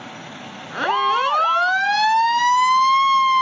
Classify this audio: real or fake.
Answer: real